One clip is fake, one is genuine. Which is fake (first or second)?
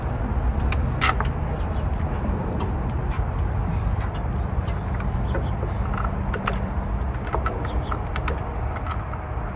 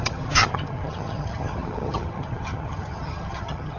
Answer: second